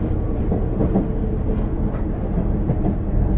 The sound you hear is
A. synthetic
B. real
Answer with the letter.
B